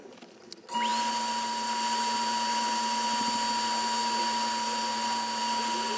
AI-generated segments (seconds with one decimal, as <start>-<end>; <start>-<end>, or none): none